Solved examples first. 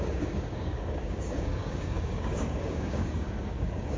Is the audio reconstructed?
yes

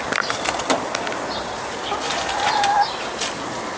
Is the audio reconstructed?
no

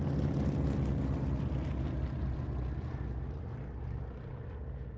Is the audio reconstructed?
no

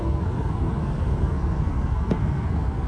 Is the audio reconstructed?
yes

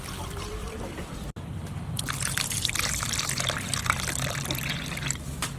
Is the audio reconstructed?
yes